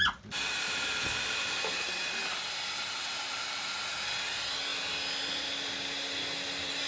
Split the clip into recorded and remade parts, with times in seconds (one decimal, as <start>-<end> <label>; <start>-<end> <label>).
0.0-6.9 recorded